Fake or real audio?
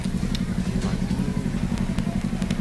real